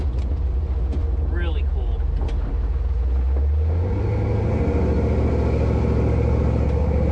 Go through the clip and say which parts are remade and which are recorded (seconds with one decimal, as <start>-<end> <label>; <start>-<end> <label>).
0.0-7.1 recorded